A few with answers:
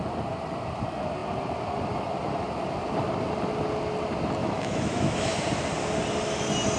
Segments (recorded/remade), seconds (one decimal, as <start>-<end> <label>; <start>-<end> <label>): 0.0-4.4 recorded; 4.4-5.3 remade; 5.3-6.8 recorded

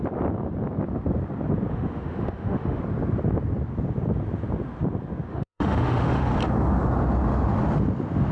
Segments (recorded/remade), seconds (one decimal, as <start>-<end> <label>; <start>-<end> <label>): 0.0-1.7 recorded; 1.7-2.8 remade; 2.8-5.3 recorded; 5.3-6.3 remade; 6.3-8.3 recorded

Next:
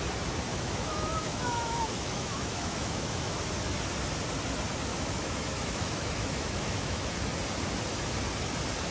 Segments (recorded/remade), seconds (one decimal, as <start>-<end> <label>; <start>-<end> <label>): 0.0-0.5 recorded; 0.5-3.4 remade; 3.4-4.9 recorded; 4.9-7.1 remade; 7.1-8.9 recorded

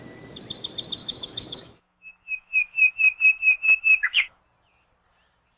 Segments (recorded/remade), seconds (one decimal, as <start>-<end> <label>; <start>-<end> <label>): 0.0-1.0 recorded; 1.0-4.4 remade; 4.4-5.6 recorded

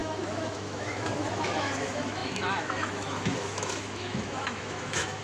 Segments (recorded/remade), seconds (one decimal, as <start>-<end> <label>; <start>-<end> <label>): 0.0-5.2 remade